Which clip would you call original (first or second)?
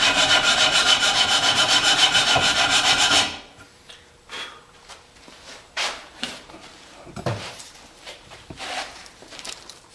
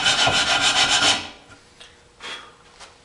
second